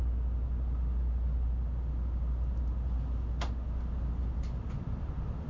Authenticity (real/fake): real